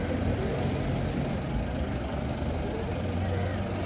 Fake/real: real